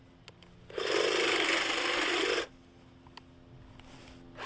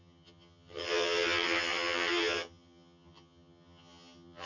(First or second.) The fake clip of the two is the second